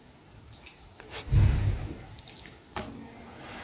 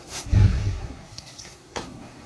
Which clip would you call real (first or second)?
first